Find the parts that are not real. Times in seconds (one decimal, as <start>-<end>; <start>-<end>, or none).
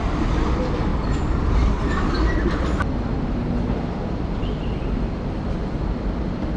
0.9-1.7; 3.1-4.3